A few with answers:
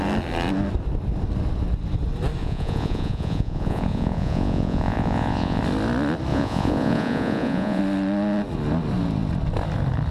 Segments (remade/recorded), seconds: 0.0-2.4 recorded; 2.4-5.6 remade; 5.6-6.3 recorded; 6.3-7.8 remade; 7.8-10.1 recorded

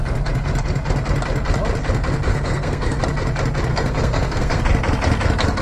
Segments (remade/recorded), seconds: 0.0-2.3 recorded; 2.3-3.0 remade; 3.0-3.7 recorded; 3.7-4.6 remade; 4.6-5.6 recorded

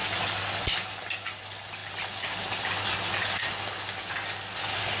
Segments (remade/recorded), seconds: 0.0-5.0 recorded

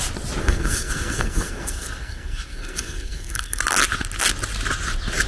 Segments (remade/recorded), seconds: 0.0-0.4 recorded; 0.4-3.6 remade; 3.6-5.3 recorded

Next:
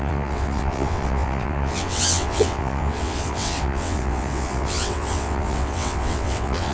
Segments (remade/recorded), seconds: 0.0-6.7 remade

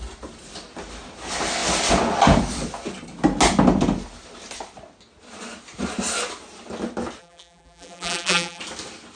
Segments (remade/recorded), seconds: 0.0-7.2 recorded; 7.2-8.6 remade; 8.6-9.2 recorded

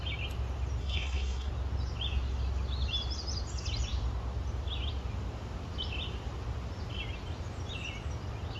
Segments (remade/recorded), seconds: 0.0-0.8 recorded; 0.8-1.5 remade; 1.5-8.6 recorded